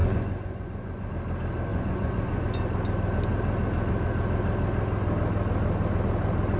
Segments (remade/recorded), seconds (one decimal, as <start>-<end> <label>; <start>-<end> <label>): 0.0-1.1 remade; 1.1-1.7 recorded; 1.7-2.4 remade; 2.4-6.6 recorded